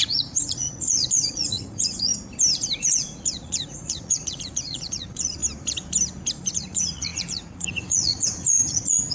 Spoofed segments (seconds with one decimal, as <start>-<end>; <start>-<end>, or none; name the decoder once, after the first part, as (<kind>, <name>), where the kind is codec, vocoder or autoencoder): 0.0-2.1 (vocoder, Vocos); 2.8-5.4; 6.5-9.1